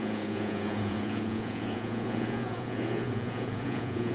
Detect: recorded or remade remade